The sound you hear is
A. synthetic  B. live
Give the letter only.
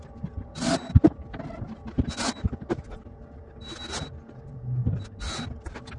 B